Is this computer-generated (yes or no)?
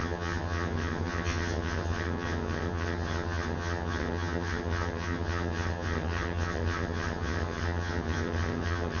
yes